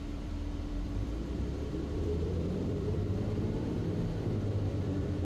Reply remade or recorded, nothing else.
remade